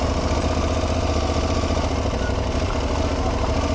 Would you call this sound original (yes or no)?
yes